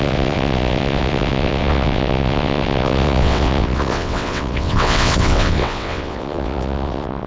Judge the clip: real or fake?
fake